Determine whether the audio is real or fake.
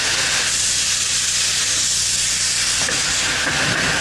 fake